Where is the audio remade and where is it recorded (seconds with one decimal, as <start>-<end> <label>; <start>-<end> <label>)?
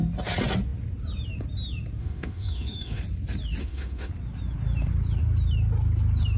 0.0-2.0 recorded; 2.0-3.0 remade; 3.0-3.6 recorded; 3.6-4.1 remade; 4.1-6.4 recorded